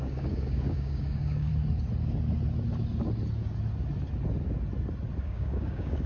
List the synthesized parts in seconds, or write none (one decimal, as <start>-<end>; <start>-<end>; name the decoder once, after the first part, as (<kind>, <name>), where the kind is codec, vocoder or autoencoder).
0.0-1.5 (codec, DAC); 5.2-6.1